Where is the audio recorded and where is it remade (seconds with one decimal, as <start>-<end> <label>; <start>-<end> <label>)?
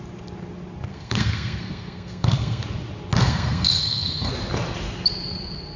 0.0-0.9 recorded; 0.9-2.6 remade; 2.6-3.2 recorded; 3.2-4.3 remade; 4.3-5.8 recorded